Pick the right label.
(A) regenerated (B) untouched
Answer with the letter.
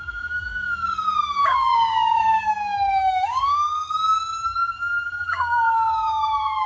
A